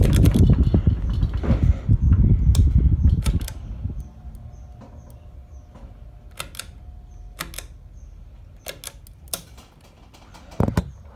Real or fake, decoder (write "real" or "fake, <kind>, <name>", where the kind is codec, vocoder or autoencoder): real